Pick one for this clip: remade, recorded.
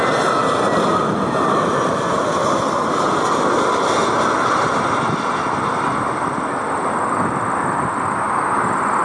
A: recorded